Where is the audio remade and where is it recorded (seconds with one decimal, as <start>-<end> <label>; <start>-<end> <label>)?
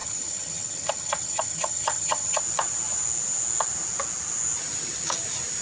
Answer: 0.0-2.4 remade; 2.4-5.6 recorded